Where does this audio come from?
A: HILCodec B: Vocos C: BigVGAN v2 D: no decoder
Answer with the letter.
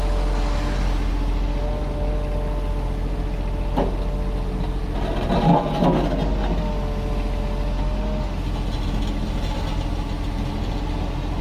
D